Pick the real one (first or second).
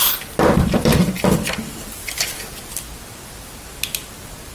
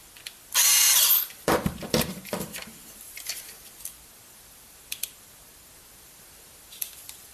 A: first